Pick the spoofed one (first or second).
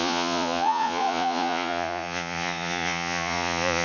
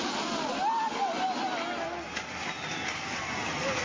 first